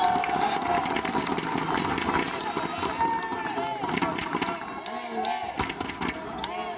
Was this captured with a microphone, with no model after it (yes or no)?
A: yes